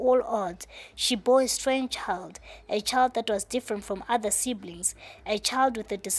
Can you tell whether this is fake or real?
real